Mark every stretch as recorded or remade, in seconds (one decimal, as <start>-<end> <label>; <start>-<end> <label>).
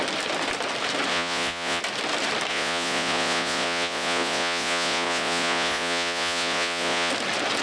0.0-1.1 recorded; 1.1-1.8 remade; 1.8-2.5 recorded; 2.5-7.1 remade; 7.1-7.6 recorded